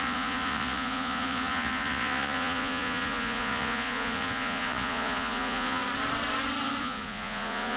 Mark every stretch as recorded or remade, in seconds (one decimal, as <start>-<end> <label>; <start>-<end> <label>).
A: 0.0-5.8 remade; 5.8-6.8 recorded; 6.8-7.8 remade